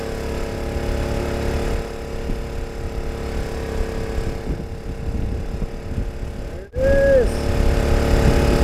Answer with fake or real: real